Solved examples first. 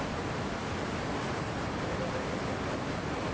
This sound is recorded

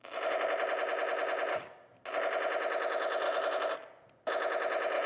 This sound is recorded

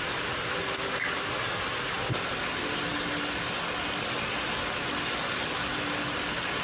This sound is recorded